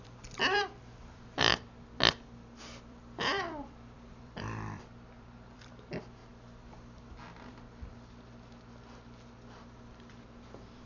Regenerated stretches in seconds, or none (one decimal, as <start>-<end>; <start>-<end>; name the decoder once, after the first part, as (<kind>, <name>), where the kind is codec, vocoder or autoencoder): 0.0-1.5 (vocoder, BigVGAN v2); 2.6-6.2; 10.1-10.9